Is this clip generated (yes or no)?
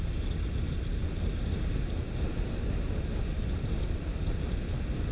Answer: no